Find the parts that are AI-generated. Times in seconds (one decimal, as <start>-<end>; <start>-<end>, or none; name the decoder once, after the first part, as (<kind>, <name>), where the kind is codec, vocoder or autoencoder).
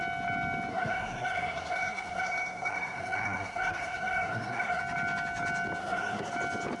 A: 0.7-4.8 (codec, SNAC); 5.8-6.3